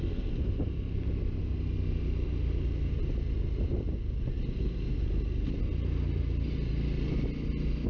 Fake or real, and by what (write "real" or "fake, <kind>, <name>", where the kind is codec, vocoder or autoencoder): real